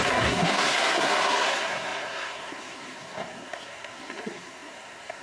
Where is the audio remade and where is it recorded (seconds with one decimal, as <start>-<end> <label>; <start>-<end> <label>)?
0.0-5.2 remade